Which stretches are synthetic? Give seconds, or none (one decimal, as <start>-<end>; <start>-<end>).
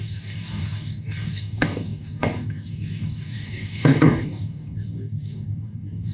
0.0-6.1